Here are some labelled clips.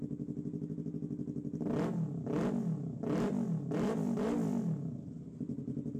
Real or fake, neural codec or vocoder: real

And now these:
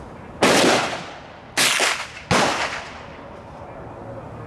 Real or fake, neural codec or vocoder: real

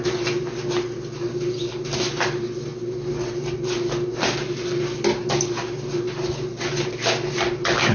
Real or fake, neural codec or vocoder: real